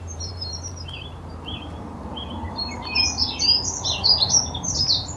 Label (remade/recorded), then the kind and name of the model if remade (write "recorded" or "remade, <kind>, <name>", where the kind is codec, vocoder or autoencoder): remade, vocoder, BigVGAN v2